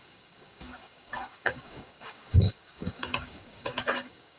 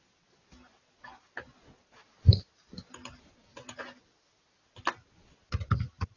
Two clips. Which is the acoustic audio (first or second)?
second